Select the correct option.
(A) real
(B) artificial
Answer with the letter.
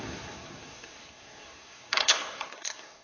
B